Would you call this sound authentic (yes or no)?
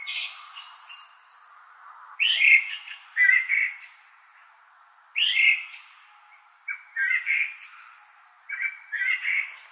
yes